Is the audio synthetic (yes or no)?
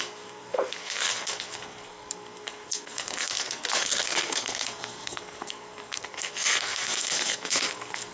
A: yes